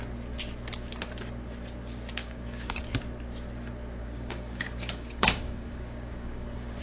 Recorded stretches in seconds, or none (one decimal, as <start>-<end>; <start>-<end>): 0.0-2.2; 2.8-4.0